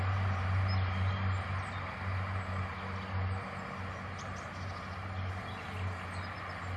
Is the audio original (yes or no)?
yes